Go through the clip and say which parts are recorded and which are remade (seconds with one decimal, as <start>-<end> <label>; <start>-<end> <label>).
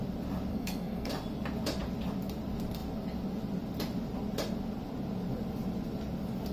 0.0-0.5 recorded; 0.5-1.1 remade; 1.1-6.5 recorded